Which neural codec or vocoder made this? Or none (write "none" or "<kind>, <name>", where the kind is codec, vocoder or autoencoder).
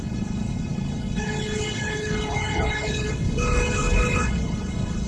codec, HILCodec